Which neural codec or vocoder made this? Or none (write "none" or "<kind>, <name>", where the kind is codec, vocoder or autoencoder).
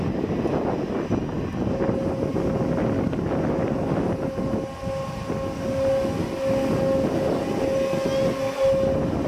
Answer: none